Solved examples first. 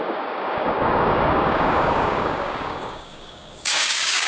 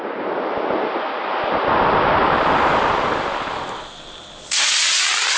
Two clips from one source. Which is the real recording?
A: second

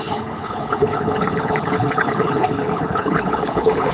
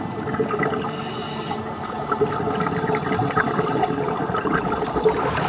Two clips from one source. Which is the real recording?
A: second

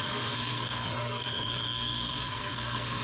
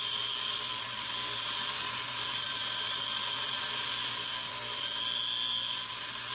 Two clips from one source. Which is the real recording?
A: second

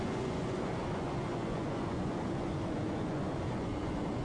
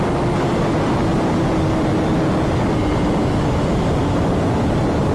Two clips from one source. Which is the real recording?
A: second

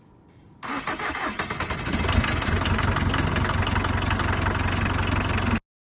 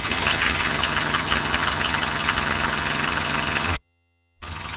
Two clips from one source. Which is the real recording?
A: first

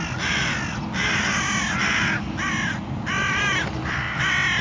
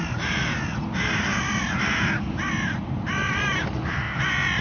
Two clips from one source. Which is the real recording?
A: first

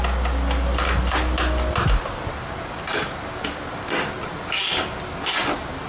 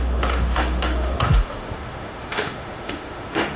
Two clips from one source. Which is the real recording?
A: first